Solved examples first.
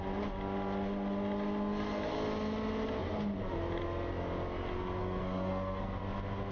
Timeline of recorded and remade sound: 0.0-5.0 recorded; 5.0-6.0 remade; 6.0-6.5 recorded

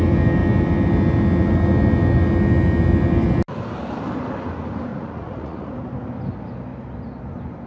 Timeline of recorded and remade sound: 0.0-4.9 recorded; 4.9-5.7 remade; 5.7-7.7 recorded

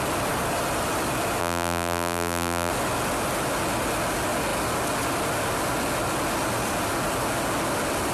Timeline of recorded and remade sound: 0.0-1.4 recorded; 1.4-2.7 remade; 2.7-8.1 recorded

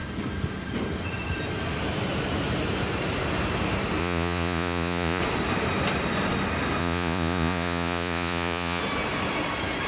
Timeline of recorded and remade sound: 0.0-4.0 recorded; 4.0-5.2 remade; 5.2-6.8 recorded; 6.8-8.8 remade; 8.8-9.9 recorded